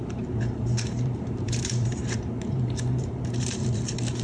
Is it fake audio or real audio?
fake